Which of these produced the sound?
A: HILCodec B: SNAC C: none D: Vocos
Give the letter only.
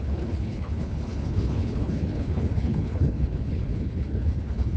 A